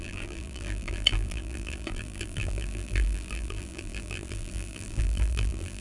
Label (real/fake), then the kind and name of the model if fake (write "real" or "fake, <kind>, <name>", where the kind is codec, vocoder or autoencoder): fake, vocoder, BigVGAN v2